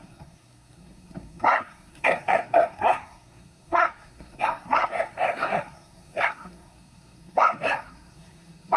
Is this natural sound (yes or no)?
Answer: no